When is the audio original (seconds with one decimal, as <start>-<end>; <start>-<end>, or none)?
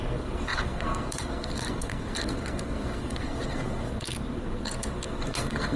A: none